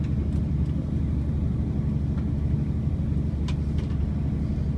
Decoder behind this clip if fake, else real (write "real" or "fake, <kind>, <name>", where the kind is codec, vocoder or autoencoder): real